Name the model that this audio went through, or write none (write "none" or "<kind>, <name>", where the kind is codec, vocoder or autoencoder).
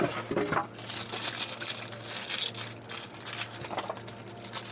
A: none